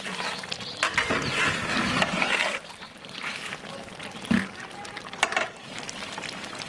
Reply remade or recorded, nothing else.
recorded